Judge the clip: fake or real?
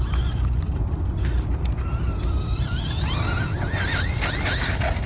real